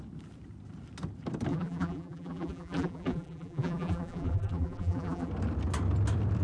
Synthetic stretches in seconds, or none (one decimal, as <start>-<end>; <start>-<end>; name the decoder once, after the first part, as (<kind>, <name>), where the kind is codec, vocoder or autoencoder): 1.5-5.3 (vocoder, BigVGAN v2)